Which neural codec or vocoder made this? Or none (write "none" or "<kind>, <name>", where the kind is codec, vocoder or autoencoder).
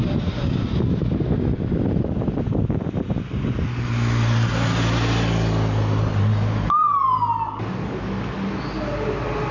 none